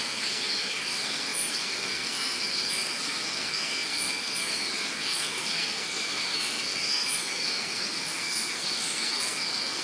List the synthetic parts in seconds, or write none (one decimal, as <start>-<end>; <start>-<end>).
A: 0.0-9.8